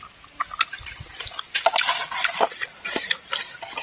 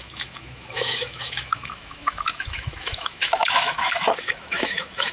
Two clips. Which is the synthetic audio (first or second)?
second